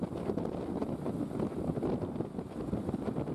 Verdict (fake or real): real